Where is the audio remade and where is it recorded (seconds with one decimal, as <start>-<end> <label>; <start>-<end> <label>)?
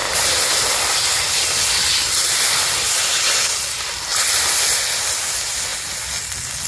0.0-4.1 recorded; 4.1-4.8 remade; 4.8-6.7 recorded